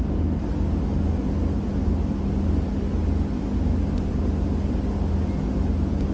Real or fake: real